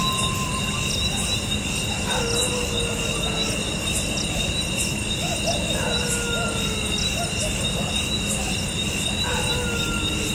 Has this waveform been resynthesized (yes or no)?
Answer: no